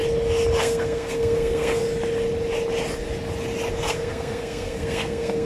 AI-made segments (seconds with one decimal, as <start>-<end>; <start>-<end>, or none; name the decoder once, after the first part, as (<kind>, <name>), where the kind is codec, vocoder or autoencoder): 0.6-1.8 (codec, SNAC); 3.7-5.5